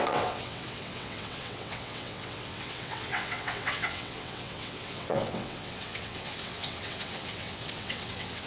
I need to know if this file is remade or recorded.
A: remade